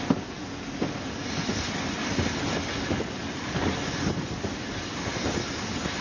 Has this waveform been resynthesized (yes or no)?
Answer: no